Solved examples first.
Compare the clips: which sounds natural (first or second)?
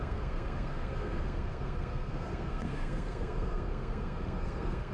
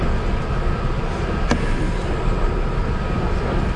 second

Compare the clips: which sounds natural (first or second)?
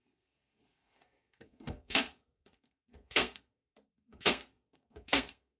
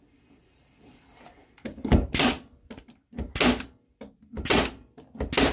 second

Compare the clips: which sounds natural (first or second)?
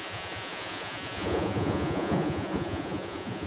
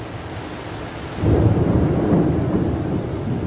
second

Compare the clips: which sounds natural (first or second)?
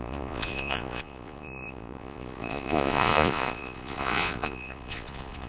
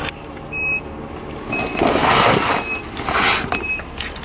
second